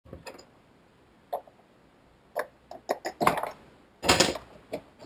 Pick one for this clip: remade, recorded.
recorded